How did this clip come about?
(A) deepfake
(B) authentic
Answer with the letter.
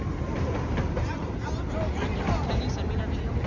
B